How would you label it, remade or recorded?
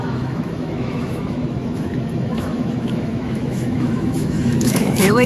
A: remade